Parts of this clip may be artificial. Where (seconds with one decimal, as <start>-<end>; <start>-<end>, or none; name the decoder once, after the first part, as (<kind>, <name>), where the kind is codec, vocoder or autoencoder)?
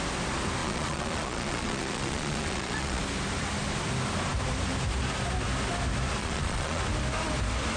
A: 0.6-3.0 (vocoder, Vocos); 6.2-6.8